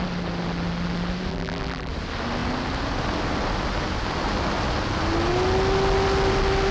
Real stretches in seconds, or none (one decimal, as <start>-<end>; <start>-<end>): 0.0-1.3; 1.9-6.7